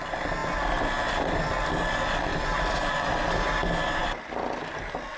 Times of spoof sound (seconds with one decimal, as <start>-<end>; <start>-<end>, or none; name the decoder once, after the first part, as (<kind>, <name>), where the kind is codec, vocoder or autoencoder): 2.3-3.1 (vocoder, BigVGAN v2)